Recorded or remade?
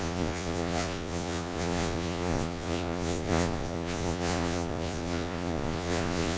remade